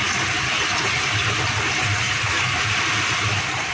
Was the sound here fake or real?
real